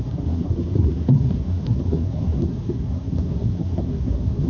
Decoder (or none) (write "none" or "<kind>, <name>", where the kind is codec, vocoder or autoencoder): codec, SNAC